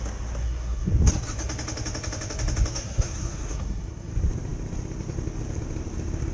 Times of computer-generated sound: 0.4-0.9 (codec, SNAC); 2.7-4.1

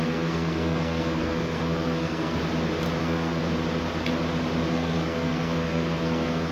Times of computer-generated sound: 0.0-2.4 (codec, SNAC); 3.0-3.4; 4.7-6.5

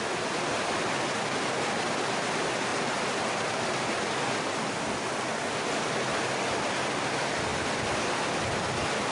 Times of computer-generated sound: none

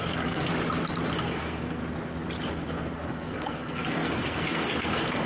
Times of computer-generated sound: 0.0-0.5 (codec, SNAC); 1.2-1.8; 2.5-5.3

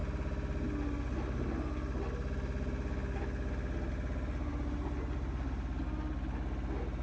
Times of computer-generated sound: none

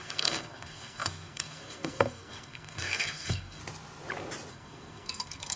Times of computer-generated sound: 0.0-3.6 (codec, SNAC); 4.5-5.6

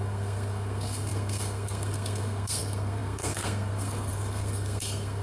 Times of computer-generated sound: 0.0-5.2 (codec, SNAC)

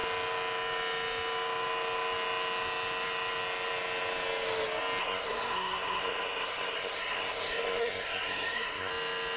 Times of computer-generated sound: 5.0-8.9 (codec, SNAC)